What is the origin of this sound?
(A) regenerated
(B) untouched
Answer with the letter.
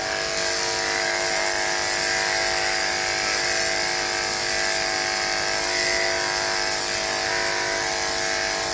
B